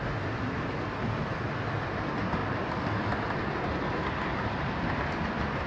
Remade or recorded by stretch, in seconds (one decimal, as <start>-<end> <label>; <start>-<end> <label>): 0.0-5.7 recorded